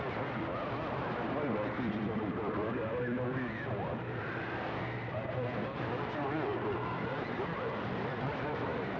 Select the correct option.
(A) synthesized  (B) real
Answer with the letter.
A